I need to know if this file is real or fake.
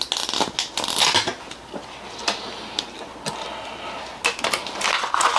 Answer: real